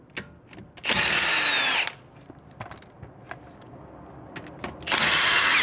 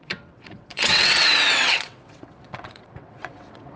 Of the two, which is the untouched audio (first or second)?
first